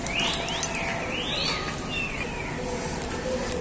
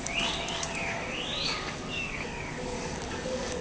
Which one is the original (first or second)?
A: first